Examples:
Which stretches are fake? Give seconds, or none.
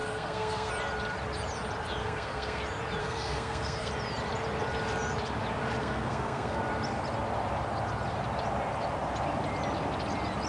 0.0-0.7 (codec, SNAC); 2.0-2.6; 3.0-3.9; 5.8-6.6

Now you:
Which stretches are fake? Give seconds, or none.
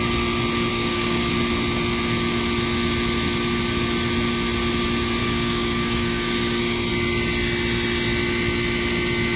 0.7-1.3 (codec, DAC); 5.2-6.9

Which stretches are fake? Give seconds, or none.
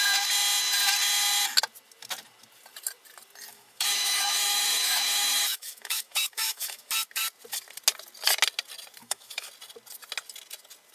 3.5-6.9 (autoencoder, DAC-VAE); 9.0-9.5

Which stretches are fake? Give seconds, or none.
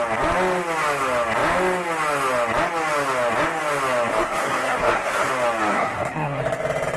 4.1-5.3 (codec, SNAC); 5.7-6.4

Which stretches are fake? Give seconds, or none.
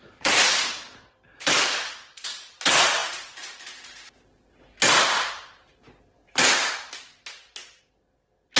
6.2-7.8 (vocoder, BigVGAN v2)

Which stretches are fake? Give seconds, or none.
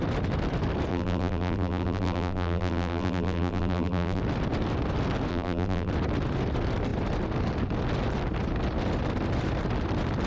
0.9-4.2 (vocoder, BigVGAN v2); 5.3-5.9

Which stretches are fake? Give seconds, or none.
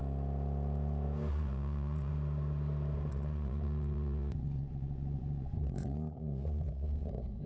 1.3-2.1 (vocoder, Vocos); 3.1-7.5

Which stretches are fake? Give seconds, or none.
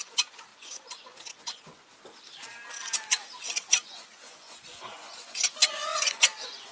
0.0-1.9 (vocoder, Vocos); 3.7-6.7